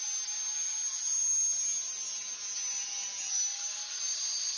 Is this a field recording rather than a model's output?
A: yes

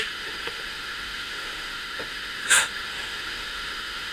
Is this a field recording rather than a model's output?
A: no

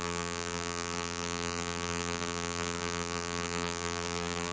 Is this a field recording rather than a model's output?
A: no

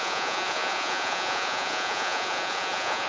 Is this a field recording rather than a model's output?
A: no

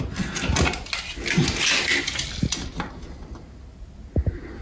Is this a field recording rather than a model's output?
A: yes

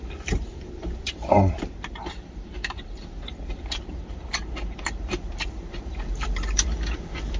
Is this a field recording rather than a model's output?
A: no